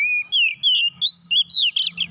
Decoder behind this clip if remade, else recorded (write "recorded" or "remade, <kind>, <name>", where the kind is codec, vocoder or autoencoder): recorded